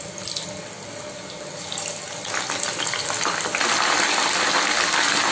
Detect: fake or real real